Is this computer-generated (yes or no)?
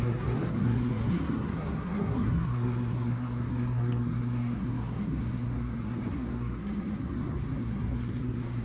yes